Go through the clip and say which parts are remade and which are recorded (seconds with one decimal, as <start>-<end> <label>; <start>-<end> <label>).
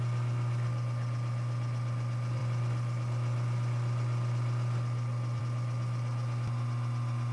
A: 0.0-7.3 recorded